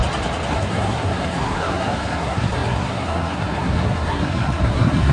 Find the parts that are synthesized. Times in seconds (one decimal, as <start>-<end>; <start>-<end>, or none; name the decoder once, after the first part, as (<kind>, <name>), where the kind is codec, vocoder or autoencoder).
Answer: 0.5-5.1 (codec, SNAC)